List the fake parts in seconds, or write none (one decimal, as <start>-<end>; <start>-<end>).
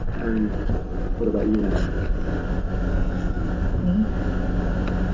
2.9-3.5